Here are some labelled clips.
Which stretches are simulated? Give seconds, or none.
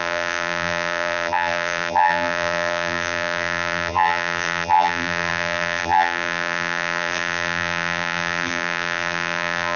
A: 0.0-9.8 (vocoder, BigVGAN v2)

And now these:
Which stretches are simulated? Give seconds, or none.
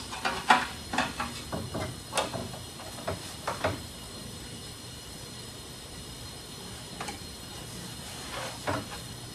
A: 2.4-7.5 (vocoder, BigVGAN v2)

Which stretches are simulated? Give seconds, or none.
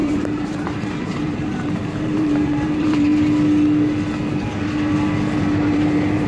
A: 0.0-3.1 (vocoder, BigVGAN v2); 5.4-6.3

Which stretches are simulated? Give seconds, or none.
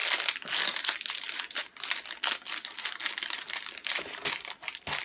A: 0.6-1.6 (vocoder, BigVGAN v2); 3.9-5.0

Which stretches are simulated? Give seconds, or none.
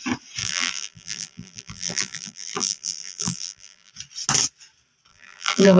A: 0.4-3.9 (vocoder, BigVGAN v2); 5.1-5.8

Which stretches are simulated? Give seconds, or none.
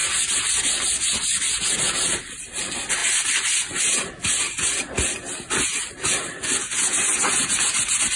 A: none